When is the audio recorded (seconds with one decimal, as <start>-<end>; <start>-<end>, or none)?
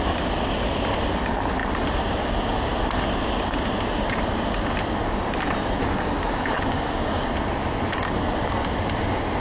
0.0-5.8; 7.3-9.4